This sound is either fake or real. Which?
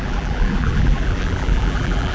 fake